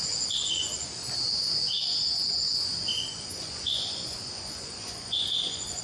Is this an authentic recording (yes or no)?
no